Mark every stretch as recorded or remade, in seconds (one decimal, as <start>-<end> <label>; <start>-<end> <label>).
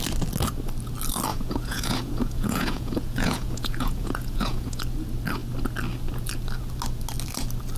0.0-1.3 recorded; 1.3-4.8 remade; 4.8-7.8 recorded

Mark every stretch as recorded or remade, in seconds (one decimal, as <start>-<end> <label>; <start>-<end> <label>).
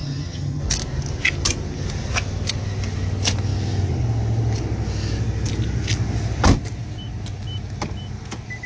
0.0-0.6 remade; 0.6-8.7 recorded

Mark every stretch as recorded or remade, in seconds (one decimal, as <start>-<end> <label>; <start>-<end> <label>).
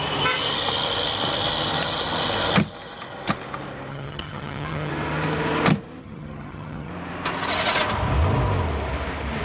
0.0-3.9 recorded; 3.9-4.9 remade; 4.9-6.0 recorded; 6.0-6.9 remade; 6.9-9.4 recorded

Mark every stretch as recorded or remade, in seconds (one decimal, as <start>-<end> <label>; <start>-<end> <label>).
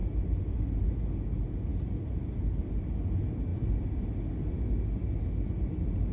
0.0-0.9 remade; 0.9-1.7 recorded; 1.7-2.7 remade; 2.7-3.5 recorded; 3.5-4.7 remade; 4.7-6.1 recorded